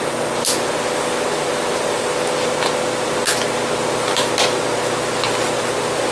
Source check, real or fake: real